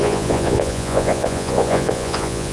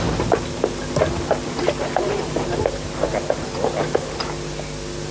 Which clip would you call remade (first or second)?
first